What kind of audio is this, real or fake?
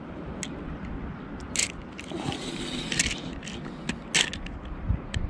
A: real